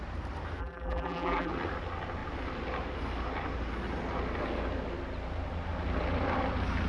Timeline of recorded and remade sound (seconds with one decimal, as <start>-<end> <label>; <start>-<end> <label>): 0.0-0.6 recorded; 0.6-1.5 remade; 1.5-6.9 recorded